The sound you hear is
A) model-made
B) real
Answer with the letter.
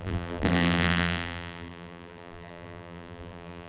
A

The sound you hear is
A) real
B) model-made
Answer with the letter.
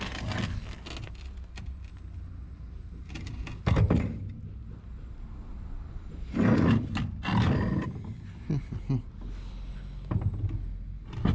A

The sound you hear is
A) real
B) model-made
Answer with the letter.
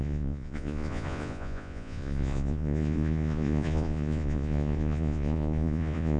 B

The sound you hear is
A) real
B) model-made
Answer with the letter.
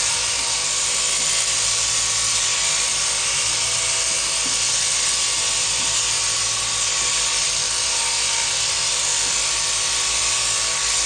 A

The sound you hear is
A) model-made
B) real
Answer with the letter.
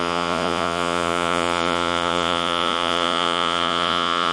A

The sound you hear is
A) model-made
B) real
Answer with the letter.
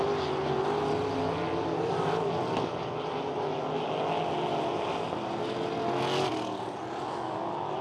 B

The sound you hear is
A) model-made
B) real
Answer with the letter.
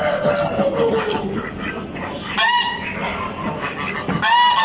B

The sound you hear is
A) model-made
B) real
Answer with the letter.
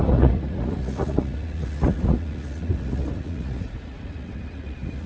A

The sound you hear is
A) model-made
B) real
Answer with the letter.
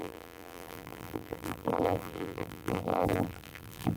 A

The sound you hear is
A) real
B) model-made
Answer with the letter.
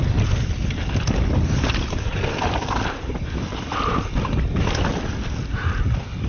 B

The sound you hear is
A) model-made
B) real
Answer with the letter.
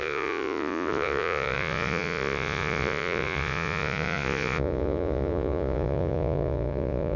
A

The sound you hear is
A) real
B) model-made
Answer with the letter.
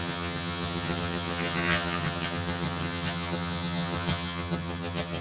B